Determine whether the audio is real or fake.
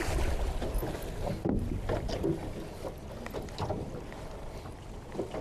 real